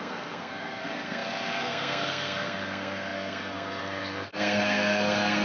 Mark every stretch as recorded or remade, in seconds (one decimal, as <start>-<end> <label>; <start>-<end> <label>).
0.0-5.4 remade